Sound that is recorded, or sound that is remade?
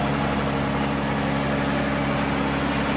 recorded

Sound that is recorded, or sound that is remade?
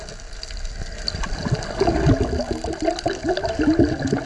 recorded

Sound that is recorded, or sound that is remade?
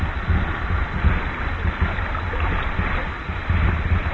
recorded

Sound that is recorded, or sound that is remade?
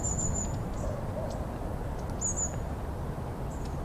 recorded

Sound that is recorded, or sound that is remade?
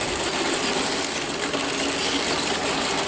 recorded